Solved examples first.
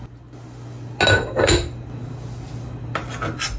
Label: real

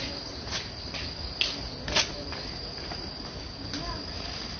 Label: real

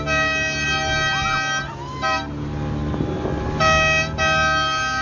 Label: real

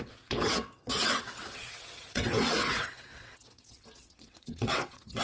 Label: fake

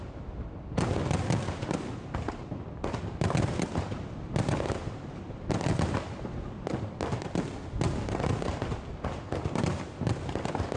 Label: real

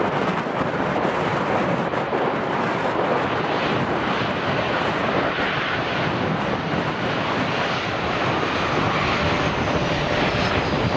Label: real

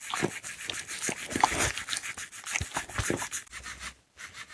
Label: real